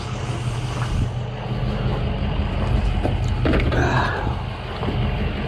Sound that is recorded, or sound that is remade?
recorded